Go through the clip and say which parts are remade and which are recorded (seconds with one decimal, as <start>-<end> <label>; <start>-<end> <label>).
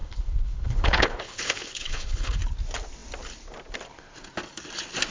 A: 0.0-2.4 remade; 2.4-5.1 recorded